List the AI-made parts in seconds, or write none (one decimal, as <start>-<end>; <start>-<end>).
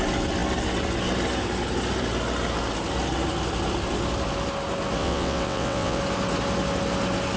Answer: 5.0-6.0